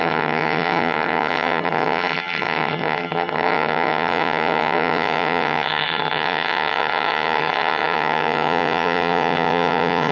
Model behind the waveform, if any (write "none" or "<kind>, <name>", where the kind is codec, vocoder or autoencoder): vocoder, HiFi-GAN